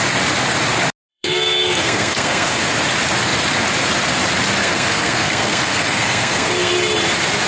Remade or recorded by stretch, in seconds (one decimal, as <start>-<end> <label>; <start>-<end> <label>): 0.0-1.1 recorded; 1.1-2.6 remade; 2.6-4.6 recorded; 4.6-6.7 remade; 6.7-7.5 recorded